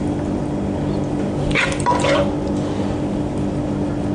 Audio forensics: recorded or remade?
recorded